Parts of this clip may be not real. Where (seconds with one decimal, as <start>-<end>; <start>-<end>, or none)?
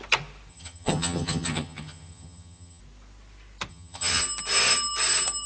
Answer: 0.5-2.8; 3.7-4.2